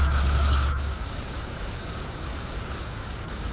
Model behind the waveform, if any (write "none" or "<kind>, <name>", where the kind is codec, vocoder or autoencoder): codec, DAC